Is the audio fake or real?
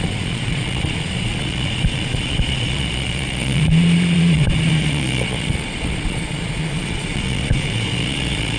fake